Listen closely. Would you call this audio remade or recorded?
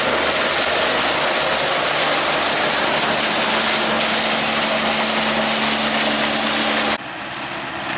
recorded